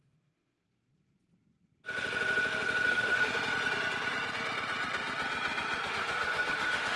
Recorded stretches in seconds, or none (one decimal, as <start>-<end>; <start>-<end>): 0.6-2.9; 3.3-5.9